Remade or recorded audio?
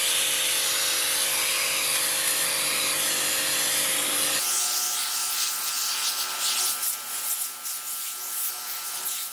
recorded